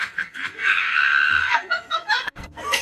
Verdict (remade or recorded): remade